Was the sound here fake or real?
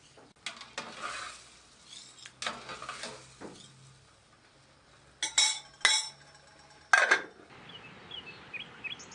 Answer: real